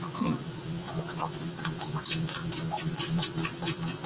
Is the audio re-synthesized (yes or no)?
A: yes